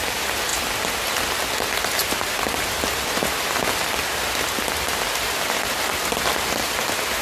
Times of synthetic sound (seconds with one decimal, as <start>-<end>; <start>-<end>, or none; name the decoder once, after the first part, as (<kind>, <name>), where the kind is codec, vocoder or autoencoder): none